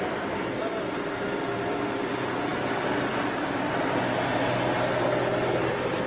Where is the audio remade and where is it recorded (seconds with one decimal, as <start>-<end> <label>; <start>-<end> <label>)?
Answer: 0.0-0.6 recorded; 0.6-1.8 remade; 1.8-2.5 recorded; 2.5-4.0 remade; 4.0-6.1 recorded